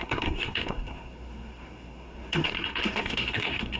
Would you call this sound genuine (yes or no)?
no